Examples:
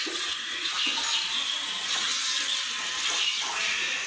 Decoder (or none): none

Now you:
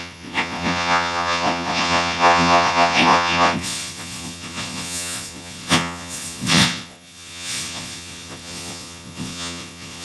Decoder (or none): vocoder, Vocos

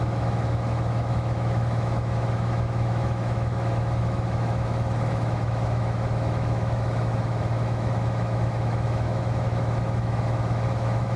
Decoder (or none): autoencoder, DAC-VAE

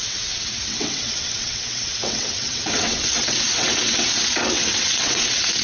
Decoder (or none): vocoder, WaveNeXt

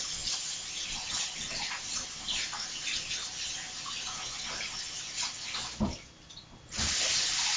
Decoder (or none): none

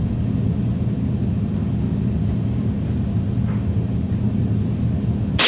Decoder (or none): none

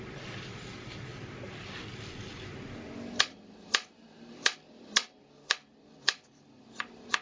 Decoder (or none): none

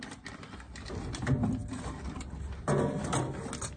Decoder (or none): none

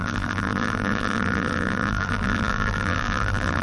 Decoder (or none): vocoder, BigVGAN v2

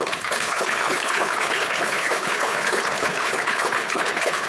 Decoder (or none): codec, HILCodec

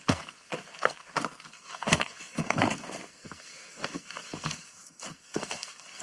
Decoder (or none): codec, SNAC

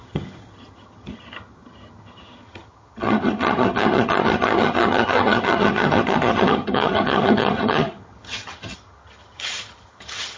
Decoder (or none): vocoder, HiFi-GAN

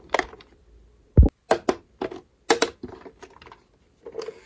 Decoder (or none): none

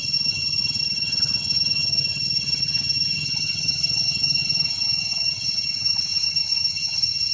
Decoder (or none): vocoder, HiFi-GAN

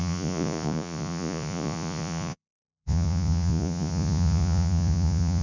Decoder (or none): vocoder, Vocos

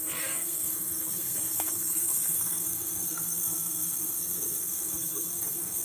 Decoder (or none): codec, SNAC